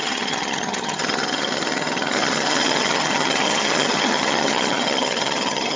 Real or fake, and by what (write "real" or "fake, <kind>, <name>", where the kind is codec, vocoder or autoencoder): fake, vocoder, HiFi-GAN